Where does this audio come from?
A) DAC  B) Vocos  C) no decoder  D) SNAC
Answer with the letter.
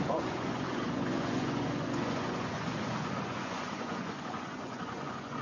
B